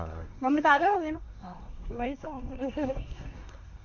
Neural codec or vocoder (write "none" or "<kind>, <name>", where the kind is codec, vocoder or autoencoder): codec, SNAC